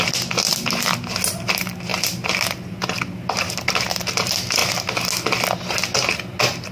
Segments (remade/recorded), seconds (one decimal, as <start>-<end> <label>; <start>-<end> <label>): 0.0-6.7 recorded